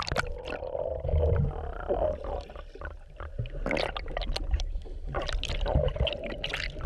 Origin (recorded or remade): recorded